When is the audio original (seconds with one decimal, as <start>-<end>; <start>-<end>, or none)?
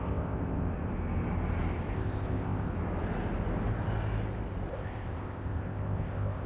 0.7-1.9; 2.7-4.7